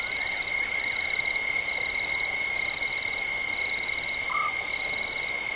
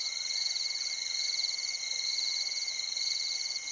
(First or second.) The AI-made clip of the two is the second